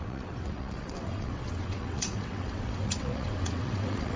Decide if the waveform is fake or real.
fake